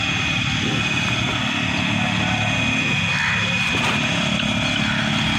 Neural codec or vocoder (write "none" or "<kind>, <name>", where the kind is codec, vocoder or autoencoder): none